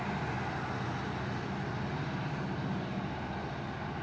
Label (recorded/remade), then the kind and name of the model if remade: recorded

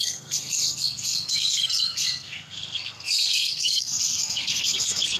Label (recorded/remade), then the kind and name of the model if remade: remade, codec, SNAC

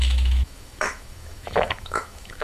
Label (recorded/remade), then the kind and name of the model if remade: remade, autoencoder, DAC-VAE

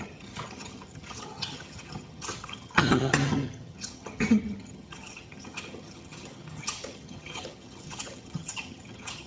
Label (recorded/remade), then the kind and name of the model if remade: remade, vocoder, HiFi-GAN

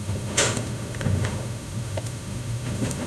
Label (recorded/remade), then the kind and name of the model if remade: remade, autoencoder, DAC-VAE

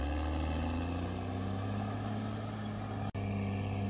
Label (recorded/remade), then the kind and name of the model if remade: recorded